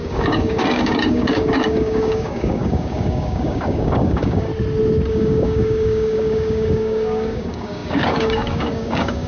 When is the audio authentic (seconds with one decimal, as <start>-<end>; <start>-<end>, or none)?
4.5-5.1